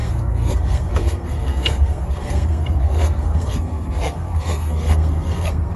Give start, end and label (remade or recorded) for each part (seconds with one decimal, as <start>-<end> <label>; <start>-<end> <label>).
0.0-5.8 remade